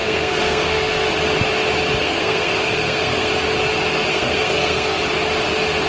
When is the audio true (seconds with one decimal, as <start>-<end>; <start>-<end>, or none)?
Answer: 1.1-2.0; 3.3-4.1; 5.0-5.9